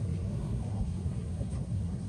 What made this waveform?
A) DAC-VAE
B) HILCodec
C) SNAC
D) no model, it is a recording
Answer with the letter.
C